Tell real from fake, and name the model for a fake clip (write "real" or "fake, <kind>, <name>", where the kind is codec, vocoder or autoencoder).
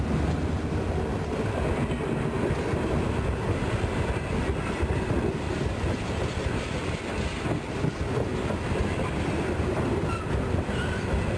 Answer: real